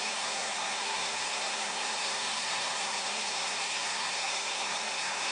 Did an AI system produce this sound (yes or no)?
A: yes